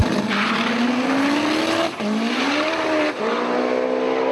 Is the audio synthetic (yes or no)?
no